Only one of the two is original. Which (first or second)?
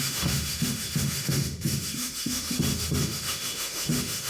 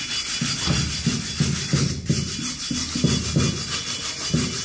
second